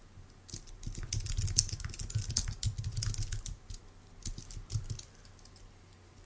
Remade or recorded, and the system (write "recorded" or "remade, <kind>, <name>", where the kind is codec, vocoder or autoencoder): recorded